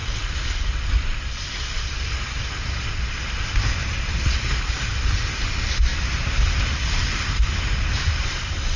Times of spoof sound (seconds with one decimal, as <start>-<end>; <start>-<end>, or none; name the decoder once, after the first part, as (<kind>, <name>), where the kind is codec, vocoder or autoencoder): 5.9-6.6 (vocoder, BigVGAN v2)